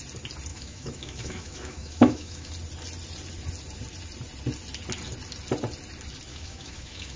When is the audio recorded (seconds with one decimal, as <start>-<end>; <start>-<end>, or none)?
0.0-0.5; 2.5-6.3